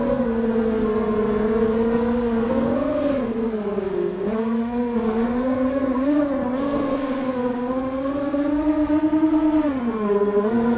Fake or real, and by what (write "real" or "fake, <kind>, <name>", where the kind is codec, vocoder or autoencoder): fake, codec, SNAC